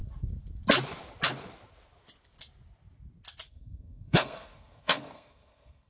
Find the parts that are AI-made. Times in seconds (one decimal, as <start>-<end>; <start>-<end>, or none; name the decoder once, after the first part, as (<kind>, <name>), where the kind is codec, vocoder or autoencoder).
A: 3.5-5.9 (codec, SNAC)

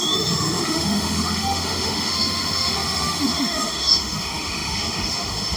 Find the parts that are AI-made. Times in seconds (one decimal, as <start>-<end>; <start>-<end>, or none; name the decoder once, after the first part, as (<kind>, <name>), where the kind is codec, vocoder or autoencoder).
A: 0.0-5.6 (autoencoder, DAC-VAE)

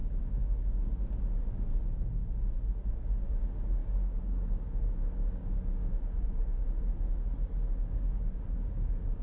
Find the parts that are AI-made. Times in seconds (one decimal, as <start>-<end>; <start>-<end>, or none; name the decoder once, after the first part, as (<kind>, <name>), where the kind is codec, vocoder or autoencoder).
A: 0.0-0.8 (codec, DAC); 3.8-7.1; 7.8-9.2